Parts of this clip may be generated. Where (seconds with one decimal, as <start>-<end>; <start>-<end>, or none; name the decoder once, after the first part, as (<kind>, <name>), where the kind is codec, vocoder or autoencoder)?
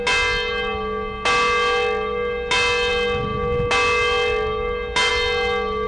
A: none